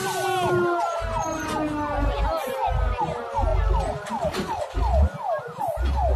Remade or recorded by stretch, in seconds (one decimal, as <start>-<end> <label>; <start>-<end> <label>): 0.0-6.2 recorded